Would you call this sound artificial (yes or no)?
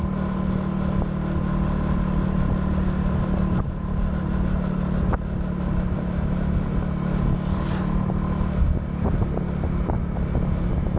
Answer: no